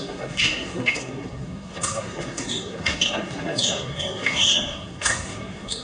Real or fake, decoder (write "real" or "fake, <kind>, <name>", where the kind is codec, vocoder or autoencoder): fake, codec, SNAC